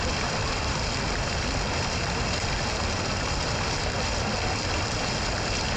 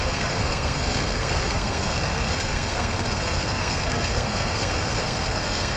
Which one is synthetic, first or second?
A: second